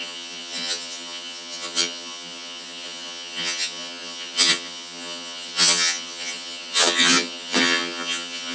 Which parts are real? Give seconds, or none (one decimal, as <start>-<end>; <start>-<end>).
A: none